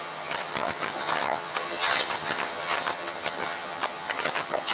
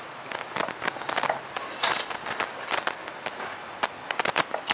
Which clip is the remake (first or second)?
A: first